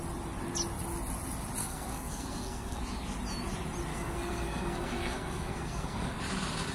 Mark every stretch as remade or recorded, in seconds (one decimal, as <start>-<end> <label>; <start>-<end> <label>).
0.0-1.6 recorded; 1.6-2.8 remade; 2.8-3.9 recorded; 3.9-6.2 remade; 6.2-6.7 recorded